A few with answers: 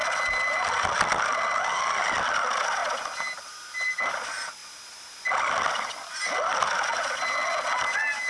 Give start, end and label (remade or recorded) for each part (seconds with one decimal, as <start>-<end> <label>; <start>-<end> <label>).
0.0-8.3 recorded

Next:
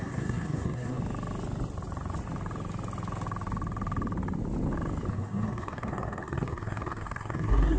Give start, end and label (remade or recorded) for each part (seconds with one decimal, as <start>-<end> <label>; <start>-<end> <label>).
0.0-1.0 remade; 1.0-5.1 recorded; 5.1-7.8 remade

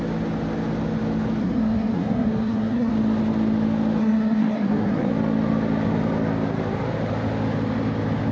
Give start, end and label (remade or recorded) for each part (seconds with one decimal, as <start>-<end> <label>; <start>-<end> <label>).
0.0-1.4 recorded; 1.4-2.9 remade; 2.9-4.0 recorded; 4.0-5.1 remade; 5.1-8.3 recorded

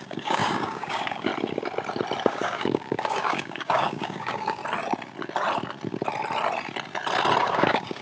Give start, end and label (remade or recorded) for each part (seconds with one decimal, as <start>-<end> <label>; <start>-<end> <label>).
0.0-1.3 remade; 1.3-2.3 recorded; 2.3-4.6 remade; 4.6-7.4 recorded; 7.4-8.0 remade

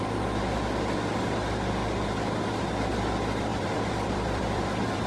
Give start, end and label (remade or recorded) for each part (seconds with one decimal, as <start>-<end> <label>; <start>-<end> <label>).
0.0-3.5 recorded; 3.5-5.1 remade

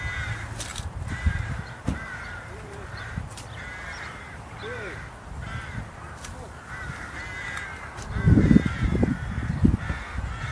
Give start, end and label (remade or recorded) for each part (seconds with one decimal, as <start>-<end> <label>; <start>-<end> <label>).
0.0-0.7 recorded; 0.7-5.1 remade; 5.1-8.9 recorded; 8.9-9.7 remade; 9.7-10.5 recorded

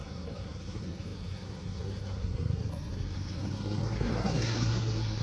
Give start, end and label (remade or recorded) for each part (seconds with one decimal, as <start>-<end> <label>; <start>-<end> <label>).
0.0-5.2 remade